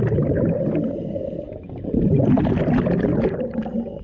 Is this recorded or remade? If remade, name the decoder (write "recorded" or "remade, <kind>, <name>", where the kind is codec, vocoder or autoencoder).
recorded